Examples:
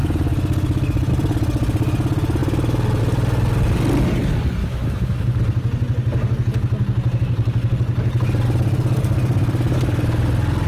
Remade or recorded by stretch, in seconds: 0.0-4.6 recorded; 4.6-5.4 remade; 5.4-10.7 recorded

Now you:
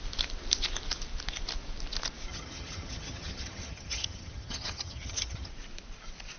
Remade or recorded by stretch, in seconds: 0.0-2.3 recorded; 2.3-5.5 remade; 5.5-6.4 recorded

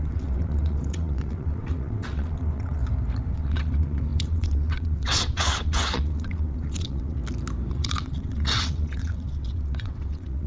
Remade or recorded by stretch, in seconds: 0.0-2.8 remade; 2.8-3.3 recorded; 3.3-7.2 remade; 7.2-7.7 recorded; 7.7-10.5 remade